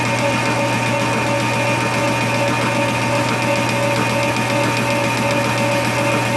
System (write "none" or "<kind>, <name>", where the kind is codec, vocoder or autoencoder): none